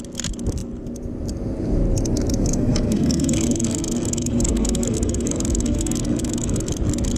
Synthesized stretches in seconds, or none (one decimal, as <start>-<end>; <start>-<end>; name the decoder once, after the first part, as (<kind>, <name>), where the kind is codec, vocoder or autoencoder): 2.4-6.7 (codec, SNAC)